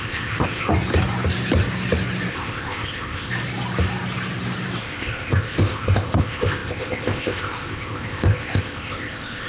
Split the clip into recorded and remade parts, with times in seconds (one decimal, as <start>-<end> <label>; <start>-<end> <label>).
0.0-0.7 remade; 0.7-2.3 recorded; 2.3-3.3 remade; 3.3-4.8 recorded; 4.8-9.5 remade